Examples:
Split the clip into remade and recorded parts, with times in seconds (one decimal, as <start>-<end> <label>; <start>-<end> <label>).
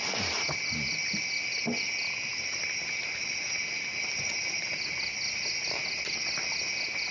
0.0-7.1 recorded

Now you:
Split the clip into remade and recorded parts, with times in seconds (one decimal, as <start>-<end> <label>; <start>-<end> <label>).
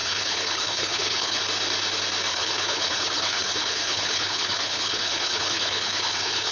0.0-1.4 remade; 1.4-2.3 recorded; 2.3-6.5 remade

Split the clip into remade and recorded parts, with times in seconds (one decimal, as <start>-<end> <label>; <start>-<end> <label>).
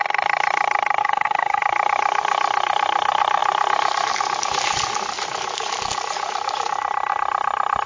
0.0-1.0 recorded; 1.0-1.6 remade; 1.6-7.9 recorded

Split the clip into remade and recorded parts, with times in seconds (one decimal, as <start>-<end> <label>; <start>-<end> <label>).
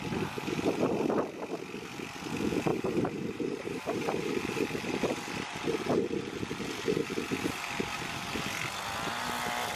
0.0-2.7 recorded; 2.7-4.3 remade; 4.3-9.8 recorded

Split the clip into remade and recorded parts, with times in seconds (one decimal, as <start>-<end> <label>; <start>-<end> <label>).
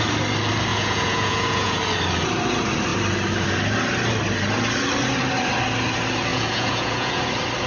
0.0-0.7 recorded; 0.7-1.8 remade; 1.8-6.3 recorded; 6.3-7.2 remade; 7.2-7.7 recorded